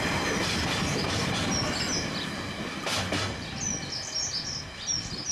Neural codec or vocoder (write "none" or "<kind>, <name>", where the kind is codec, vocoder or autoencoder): none